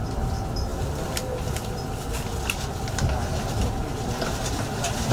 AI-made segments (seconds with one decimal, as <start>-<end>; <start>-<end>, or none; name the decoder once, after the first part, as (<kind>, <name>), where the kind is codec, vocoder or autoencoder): none